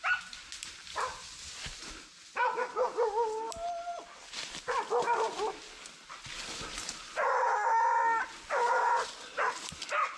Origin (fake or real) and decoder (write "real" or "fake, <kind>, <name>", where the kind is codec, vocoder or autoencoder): real